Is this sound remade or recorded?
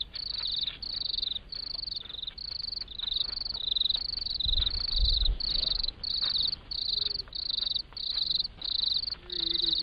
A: recorded